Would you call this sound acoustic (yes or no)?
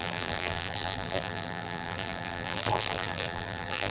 no